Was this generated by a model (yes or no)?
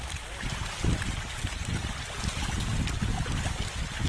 no